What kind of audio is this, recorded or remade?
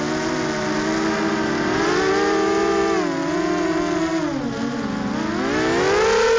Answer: recorded